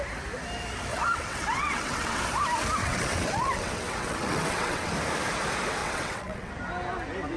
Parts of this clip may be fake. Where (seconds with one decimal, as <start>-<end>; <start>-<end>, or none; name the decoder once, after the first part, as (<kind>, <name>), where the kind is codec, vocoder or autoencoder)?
0.9-2.2 (vocoder, WaveNeXt); 2.8-4.9; 5.8-6.5